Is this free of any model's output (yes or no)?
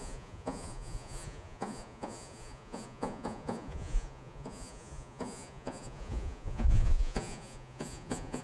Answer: no